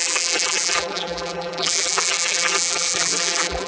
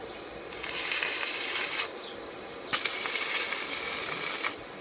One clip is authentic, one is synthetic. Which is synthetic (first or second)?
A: first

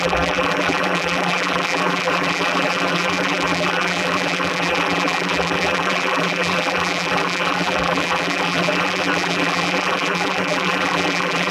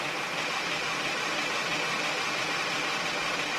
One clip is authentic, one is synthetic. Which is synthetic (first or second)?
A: first